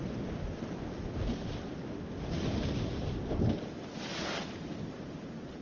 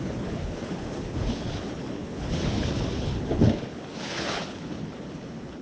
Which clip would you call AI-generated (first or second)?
second